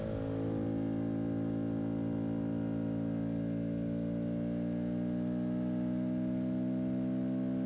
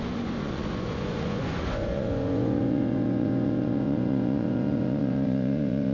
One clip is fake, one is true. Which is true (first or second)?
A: first